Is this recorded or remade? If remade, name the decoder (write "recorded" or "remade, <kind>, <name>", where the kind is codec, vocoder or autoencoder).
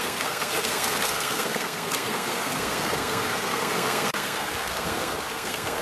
remade, codec, SNAC